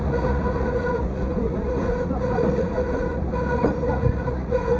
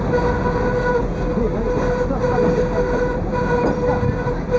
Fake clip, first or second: first